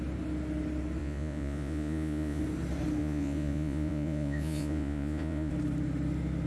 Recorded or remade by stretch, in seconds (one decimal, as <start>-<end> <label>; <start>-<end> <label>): 0.0-1.0 recorded; 1.0-2.4 remade; 2.4-3.0 recorded; 3.0-5.5 remade; 5.5-6.5 recorded